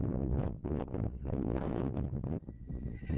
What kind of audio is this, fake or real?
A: fake